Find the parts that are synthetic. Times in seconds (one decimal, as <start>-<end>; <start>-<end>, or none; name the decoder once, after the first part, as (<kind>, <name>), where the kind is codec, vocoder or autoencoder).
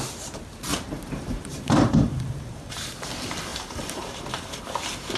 0.7-2.9 (vocoder, BigVGAN v2); 3.5-4.6